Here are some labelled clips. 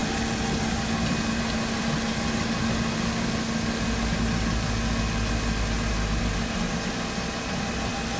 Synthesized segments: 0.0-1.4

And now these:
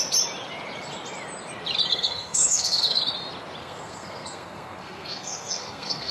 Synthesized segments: 1.9-3.0; 3.6-6.1

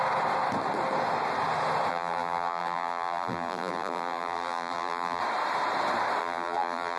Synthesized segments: 1.9-5.2; 6.2-7.0

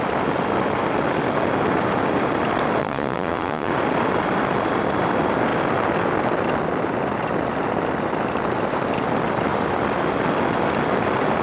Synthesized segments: 2.8-3.7

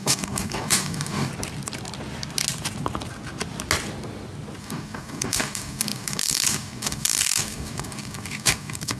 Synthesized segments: 0.0-1.3; 4.6-9.0